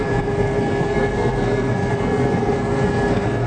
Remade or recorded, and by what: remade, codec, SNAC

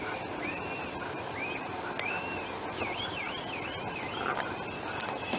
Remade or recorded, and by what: recorded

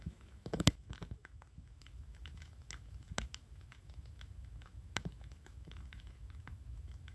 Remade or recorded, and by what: remade, autoencoder, DAC-VAE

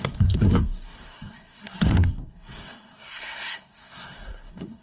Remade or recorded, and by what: remade, codec, SNAC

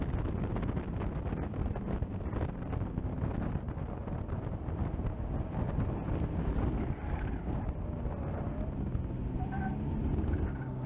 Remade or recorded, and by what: recorded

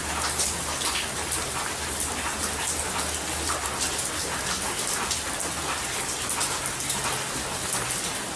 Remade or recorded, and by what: recorded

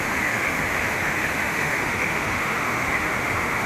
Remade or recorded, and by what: remade, autoencoder, DAC-VAE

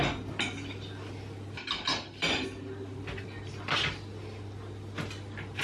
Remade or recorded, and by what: recorded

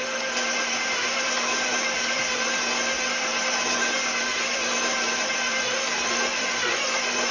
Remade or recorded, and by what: remade, vocoder, BigVGAN v2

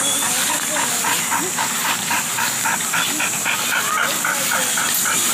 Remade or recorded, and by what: recorded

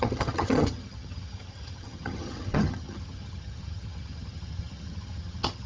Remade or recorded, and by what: remade, vocoder, HiFi-GAN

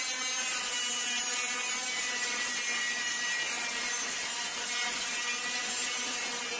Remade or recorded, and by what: recorded